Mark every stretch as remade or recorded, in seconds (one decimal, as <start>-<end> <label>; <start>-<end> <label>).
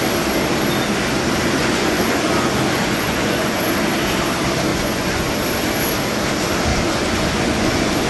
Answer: 0.0-1.6 recorded; 1.6-3.7 remade; 3.7-4.7 recorded; 4.7-5.3 remade; 5.3-6.7 recorded; 6.7-8.1 remade